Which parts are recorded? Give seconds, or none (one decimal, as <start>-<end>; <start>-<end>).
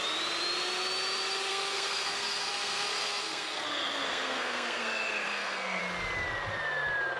0.0-1.5; 5.8-7.2